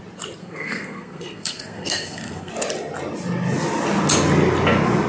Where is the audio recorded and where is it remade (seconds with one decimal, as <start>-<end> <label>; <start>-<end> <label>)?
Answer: 0.0-0.4 recorded; 0.4-2.5 remade; 2.5-5.1 recorded